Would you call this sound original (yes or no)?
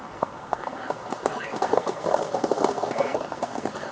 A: no